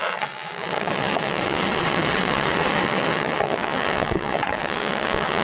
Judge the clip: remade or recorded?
remade